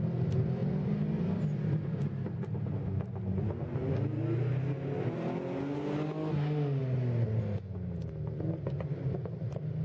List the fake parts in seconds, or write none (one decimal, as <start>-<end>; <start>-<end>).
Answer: 0.6-2.0